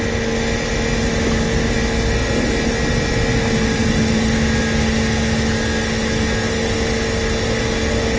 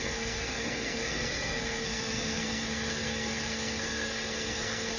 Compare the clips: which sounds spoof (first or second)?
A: second